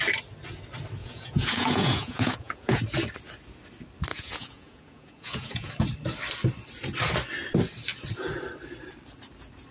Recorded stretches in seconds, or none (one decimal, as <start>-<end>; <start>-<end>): 0.0-1.0; 2.8-4.1; 5.7-9.7